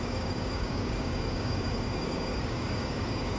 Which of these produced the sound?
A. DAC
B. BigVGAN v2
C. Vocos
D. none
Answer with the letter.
A